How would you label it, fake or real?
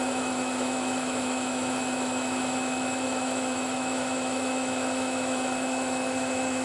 fake